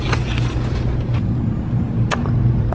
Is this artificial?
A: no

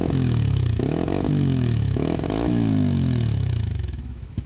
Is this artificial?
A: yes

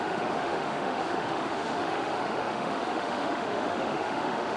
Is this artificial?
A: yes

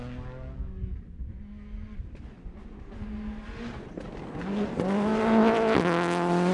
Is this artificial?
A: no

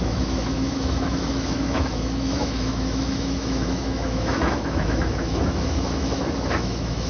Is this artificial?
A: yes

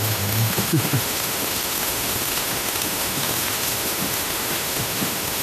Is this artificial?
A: yes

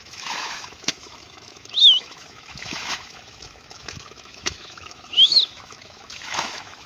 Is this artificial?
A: yes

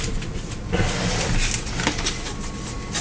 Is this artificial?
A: no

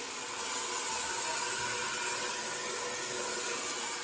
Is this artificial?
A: no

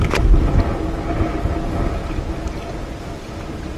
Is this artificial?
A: no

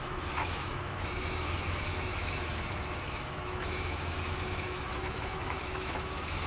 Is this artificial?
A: yes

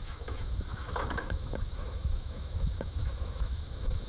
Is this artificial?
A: yes